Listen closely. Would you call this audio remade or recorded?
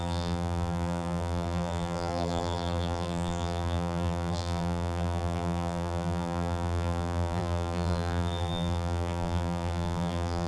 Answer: remade